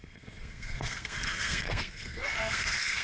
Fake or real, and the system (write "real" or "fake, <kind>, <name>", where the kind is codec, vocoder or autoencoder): fake, codec, SNAC